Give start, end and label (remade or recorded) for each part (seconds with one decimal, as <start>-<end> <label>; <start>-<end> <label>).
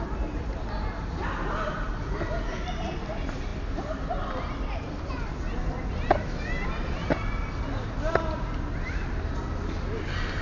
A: 0.0-10.4 recorded